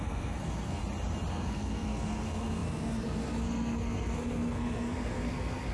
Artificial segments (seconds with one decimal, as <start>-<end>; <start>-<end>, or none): 0.0-0.8; 1.3-5.7